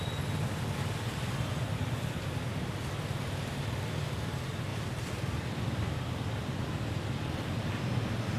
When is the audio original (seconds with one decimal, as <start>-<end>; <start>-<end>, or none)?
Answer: 0.0-4.7; 7.0-8.4